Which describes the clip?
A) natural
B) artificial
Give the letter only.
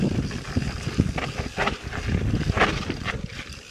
A